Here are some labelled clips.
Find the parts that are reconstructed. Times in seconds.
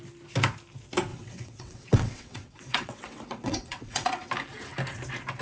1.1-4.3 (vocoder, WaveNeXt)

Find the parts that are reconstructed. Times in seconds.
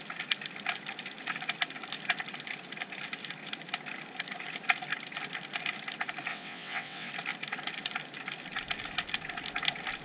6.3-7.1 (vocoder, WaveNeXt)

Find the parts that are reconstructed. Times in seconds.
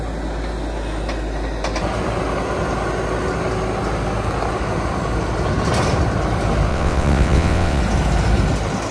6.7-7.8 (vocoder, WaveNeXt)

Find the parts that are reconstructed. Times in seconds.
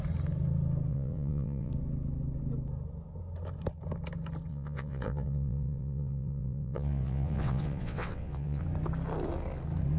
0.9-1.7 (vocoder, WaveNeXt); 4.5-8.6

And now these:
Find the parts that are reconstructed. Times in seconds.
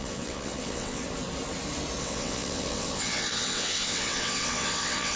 0.0-1.0 (vocoder, WaveNeXt); 2.0-5.2